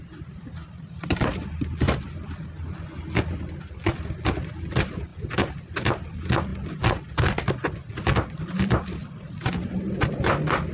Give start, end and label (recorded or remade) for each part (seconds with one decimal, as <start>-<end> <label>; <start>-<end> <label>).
0.0-10.7 recorded